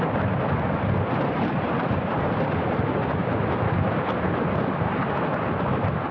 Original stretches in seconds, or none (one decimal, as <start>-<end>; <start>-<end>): 0.0-6.1